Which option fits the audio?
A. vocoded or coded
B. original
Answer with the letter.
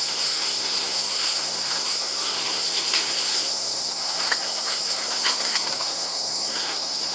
A